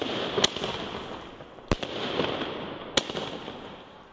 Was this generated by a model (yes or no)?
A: no